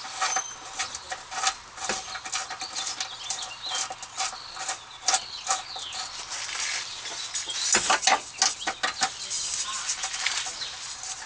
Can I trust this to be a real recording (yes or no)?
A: yes